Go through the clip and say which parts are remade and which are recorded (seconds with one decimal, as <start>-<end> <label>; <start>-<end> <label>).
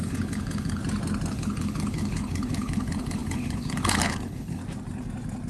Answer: 0.0-0.8 remade; 0.8-1.3 recorded; 1.3-4.6 remade; 4.6-5.5 recorded